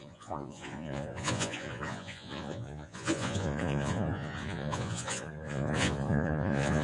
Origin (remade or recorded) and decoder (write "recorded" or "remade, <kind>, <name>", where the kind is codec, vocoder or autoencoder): remade, vocoder, Vocos